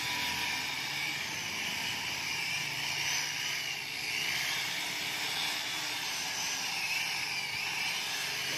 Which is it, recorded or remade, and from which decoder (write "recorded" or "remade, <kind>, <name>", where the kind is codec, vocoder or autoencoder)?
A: remade, vocoder, BigVGAN v2